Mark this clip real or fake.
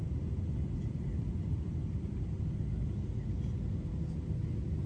real